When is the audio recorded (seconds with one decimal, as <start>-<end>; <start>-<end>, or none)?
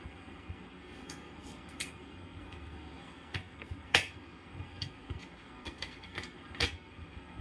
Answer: none